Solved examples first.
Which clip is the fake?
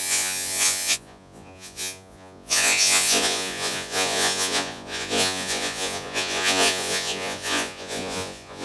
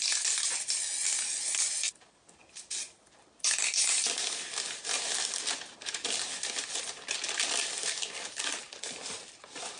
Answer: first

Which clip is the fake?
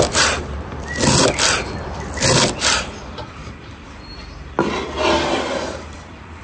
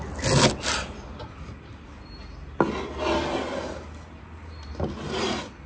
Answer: first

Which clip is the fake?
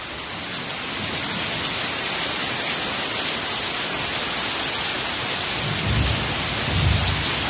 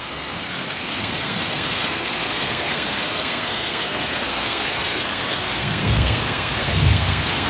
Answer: second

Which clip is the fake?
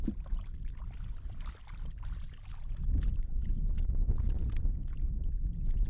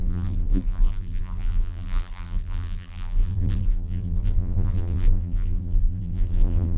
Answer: second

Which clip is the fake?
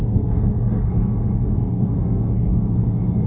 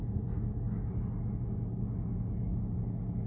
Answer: first